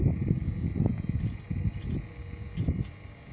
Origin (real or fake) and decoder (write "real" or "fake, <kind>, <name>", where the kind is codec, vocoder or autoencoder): real